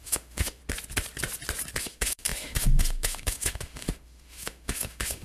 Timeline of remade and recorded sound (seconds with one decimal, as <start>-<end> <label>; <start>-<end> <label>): 0.0-0.6 remade; 0.6-1.8 recorded; 1.8-5.2 remade